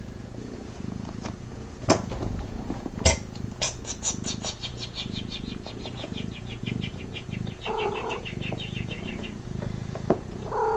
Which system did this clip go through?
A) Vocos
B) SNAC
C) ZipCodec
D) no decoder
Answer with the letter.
A